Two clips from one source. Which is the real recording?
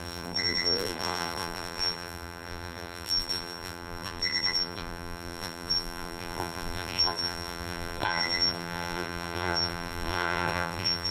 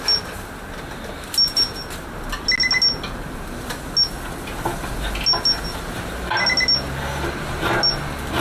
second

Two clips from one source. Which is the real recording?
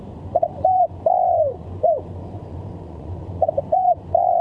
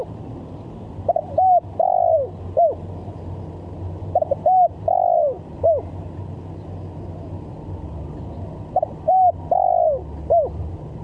second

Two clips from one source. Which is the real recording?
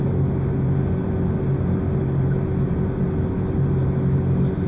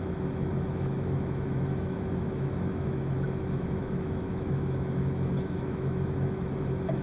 first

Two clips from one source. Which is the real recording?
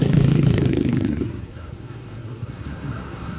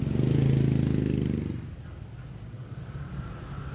second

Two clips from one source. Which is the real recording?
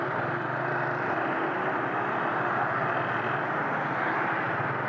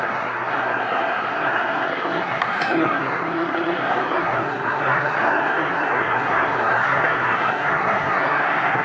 first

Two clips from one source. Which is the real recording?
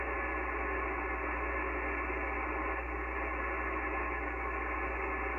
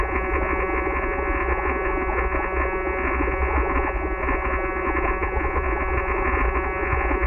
first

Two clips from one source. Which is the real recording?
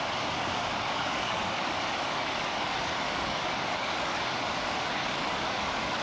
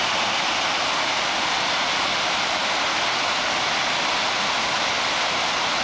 second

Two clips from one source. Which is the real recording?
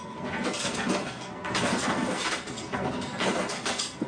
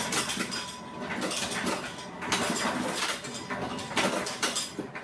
second